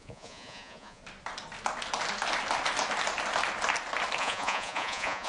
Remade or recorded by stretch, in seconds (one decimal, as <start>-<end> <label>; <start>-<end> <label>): 0.0-1.0 remade; 1.0-4.2 recorded; 4.2-5.3 remade